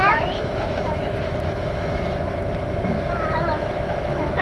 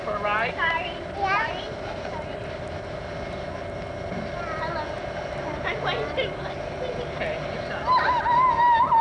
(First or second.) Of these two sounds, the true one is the second